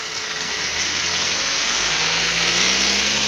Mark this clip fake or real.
fake